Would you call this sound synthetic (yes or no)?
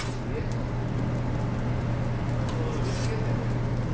no